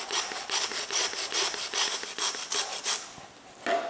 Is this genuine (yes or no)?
yes